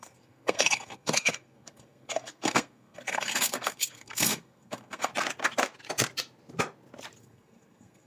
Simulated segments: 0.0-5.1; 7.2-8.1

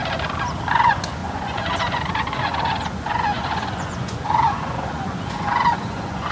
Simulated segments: 0.7-6.3

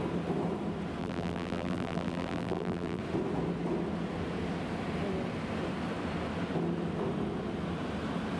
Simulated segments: 1.0-3.0

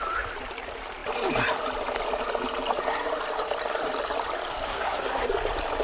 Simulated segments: 4.5-5.3

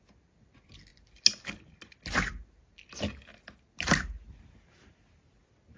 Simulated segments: none